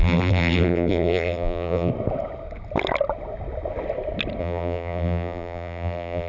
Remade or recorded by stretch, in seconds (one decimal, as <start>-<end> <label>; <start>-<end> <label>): 0.0-1.9 remade; 1.9-4.4 recorded; 4.4-6.3 remade